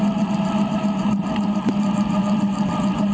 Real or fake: real